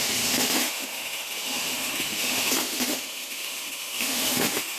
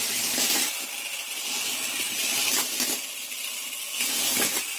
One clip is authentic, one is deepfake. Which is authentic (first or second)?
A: second